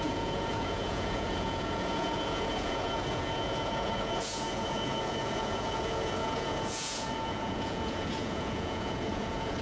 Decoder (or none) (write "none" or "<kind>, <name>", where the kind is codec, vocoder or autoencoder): vocoder, Vocos